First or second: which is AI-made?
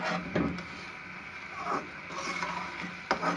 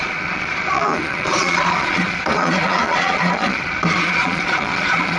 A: second